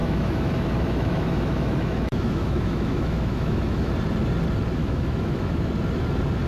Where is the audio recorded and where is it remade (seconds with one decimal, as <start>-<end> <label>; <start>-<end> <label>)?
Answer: 0.0-3.9 remade; 3.9-4.8 recorded; 4.8-5.7 remade; 5.7-6.5 recorded